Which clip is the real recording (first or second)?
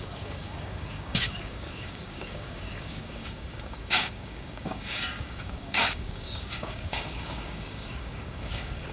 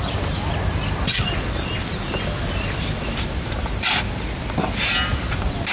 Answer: second